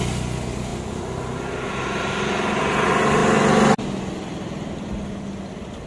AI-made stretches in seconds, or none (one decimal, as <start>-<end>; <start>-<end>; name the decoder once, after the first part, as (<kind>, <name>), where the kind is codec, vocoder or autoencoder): none